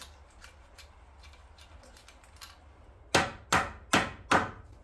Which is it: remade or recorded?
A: recorded